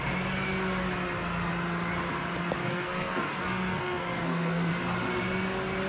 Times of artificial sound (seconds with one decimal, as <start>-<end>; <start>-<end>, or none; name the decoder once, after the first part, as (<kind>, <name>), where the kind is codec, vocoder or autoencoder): 2.6-4.7 (codec, SNAC)